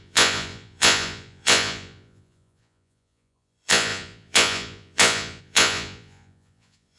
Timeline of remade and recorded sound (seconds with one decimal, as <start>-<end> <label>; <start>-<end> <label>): 0.0-7.0 remade